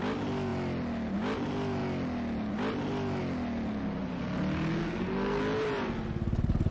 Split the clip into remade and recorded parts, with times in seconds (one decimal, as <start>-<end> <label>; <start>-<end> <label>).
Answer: 0.0-4.8 recorded; 4.8-5.4 remade; 5.4-6.7 recorded